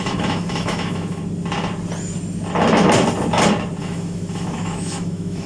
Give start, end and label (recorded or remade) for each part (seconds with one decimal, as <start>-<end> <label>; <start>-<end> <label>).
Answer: 0.0-1.2 remade; 1.2-3.8 recorded; 3.8-5.5 remade